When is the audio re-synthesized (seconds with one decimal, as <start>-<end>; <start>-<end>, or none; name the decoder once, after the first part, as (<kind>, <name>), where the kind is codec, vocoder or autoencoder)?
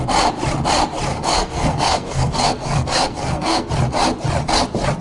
1.1-3.7 (codec, SNAC)